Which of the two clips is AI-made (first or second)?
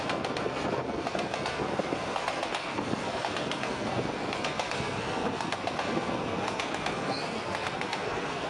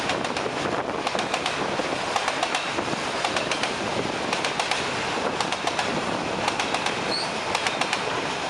first